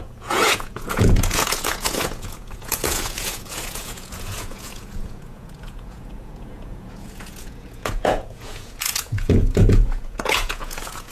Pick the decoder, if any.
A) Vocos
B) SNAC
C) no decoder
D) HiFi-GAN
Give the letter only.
A